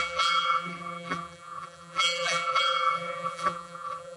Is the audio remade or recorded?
remade